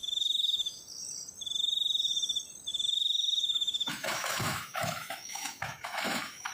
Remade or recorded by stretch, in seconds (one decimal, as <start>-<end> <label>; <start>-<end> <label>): 0.0-0.8 remade; 0.8-2.7 recorded; 2.7-6.5 remade